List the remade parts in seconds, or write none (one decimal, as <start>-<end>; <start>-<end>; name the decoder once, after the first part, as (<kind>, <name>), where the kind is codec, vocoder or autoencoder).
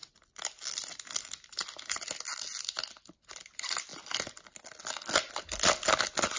none